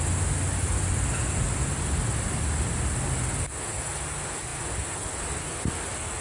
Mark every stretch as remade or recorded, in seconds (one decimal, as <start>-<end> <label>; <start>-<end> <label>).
0.0-6.2 recorded